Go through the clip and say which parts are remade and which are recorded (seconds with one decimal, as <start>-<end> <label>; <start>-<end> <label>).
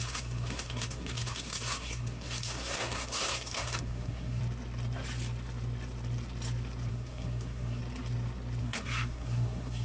0.0-4.4 remade; 4.4-6.9 recorded; 6.9-7.8 remade; 7.8-8.6 recorded; 8.6-9.8 remade